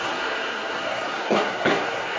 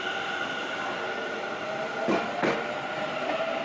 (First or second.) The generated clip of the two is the first